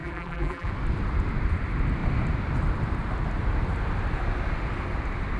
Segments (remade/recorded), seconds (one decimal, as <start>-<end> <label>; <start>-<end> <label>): 0.0-0.7 remade; 0.7-5.4 recorded